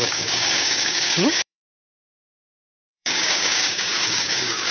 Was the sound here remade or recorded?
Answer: remade